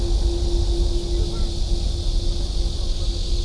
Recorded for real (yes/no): yes